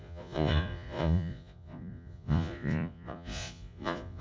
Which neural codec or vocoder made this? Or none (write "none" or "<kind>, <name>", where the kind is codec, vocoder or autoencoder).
vocoder, Vocos